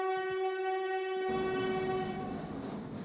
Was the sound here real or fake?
real